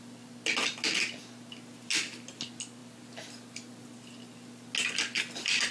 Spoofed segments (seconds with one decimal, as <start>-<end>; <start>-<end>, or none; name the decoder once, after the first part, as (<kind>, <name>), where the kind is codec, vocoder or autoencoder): none